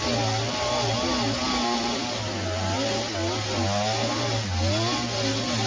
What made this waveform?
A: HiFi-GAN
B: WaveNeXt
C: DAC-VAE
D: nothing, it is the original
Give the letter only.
D